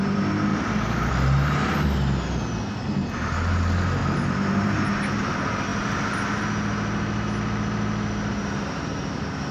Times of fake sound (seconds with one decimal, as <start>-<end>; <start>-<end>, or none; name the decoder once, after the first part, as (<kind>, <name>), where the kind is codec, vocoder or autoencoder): 0.5-1.1 (vocoder, BigVGAN v2); 4.0-4.8